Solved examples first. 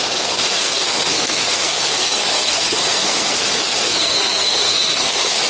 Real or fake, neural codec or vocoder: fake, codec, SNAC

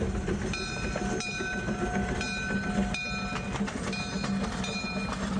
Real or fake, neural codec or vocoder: real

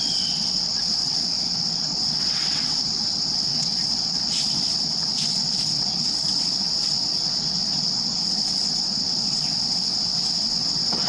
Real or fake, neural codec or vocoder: fake, vocoder, WaveNeXt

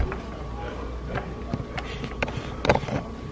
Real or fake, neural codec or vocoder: real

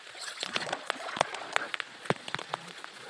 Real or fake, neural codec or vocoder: fake, vocoder, Vocos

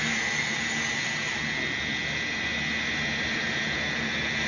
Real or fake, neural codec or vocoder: real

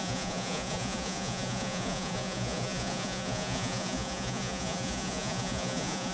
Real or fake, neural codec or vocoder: fake, vocoder, Vocos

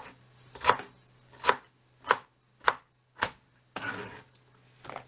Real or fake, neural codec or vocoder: real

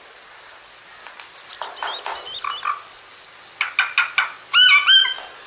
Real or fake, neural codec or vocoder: real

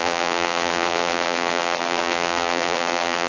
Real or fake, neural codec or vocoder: fake, vocoder, BigVGAN v2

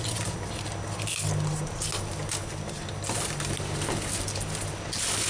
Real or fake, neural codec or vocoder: real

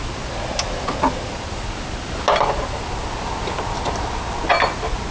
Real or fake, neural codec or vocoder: real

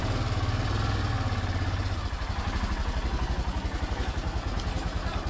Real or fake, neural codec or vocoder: real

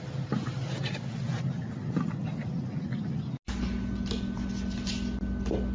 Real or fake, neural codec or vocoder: real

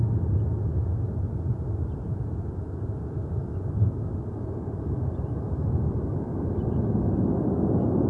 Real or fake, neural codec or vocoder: real